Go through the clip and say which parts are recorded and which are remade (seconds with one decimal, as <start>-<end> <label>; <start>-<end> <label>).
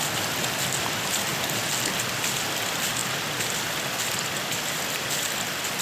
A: 0.0-5.8 recorded